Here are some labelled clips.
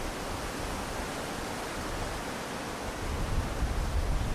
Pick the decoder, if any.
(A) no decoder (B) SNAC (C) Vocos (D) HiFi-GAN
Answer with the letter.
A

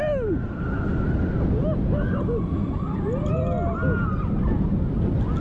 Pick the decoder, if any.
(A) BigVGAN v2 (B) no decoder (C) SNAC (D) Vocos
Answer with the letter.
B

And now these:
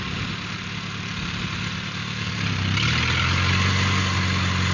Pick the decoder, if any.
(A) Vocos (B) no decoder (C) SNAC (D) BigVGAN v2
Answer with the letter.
B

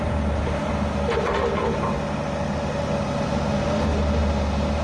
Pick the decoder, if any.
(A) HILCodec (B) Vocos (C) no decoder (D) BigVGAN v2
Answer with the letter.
C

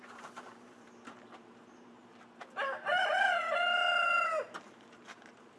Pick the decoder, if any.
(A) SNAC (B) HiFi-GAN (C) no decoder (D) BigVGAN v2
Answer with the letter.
D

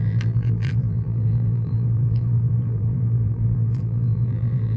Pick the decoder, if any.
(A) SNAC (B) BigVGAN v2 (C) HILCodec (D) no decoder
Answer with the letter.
B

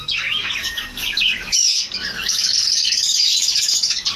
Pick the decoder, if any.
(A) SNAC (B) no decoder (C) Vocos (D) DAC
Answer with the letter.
D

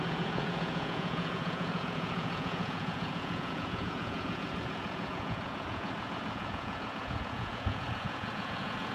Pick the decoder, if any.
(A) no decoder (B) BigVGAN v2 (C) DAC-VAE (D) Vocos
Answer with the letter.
D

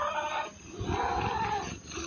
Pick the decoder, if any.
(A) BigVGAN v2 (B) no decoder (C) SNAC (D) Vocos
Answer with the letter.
B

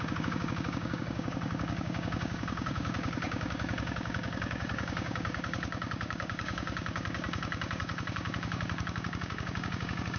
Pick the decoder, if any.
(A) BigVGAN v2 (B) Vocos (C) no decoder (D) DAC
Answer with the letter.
D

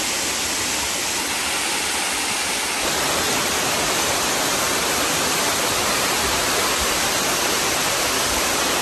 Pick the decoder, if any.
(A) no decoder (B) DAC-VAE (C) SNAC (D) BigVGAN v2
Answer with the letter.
A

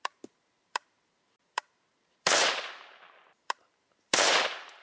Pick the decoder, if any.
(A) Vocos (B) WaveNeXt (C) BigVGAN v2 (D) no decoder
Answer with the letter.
C